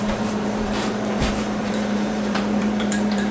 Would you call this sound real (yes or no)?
no